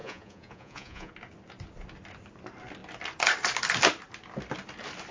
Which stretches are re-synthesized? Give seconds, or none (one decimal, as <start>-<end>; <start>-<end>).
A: 0.0-1.1